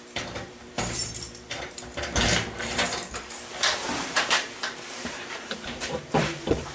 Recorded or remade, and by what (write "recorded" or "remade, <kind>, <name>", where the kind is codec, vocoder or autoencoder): remade, vocoder, BigVGAN v2